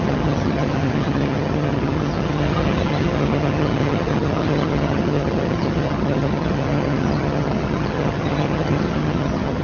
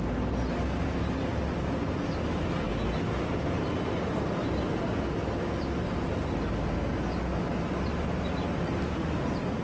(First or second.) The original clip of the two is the second